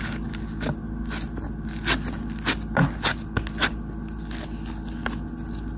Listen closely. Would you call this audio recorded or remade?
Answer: recorded